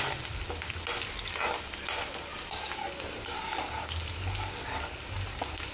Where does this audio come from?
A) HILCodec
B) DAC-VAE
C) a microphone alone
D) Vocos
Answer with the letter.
C